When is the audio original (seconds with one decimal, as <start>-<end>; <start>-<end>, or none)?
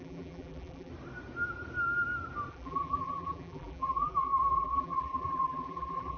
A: 0.9-2.5